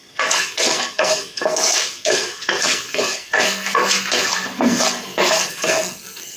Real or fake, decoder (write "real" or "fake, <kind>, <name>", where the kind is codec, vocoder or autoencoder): fake, codec, SNAC